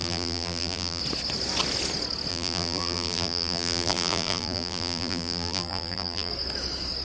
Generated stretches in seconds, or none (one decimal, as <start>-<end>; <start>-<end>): 0.0-1.0; 2.3-6.3